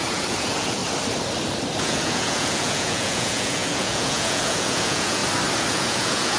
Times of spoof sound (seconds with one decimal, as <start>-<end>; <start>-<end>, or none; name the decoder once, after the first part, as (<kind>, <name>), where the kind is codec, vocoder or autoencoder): 0.0-0.8 (vocoder, Vocos); 1.8-5.2; 5.7-6.4